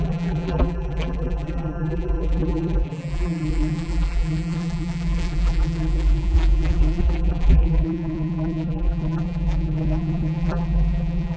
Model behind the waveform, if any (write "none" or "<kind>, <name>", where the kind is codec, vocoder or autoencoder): vocoder, BigVGAN v2